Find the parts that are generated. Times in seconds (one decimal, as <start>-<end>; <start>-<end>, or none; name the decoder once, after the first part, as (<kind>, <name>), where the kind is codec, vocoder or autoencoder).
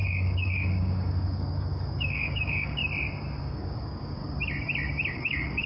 0.0-2.8 (codec, DAC); 3.4-4.2; 5.1-5.7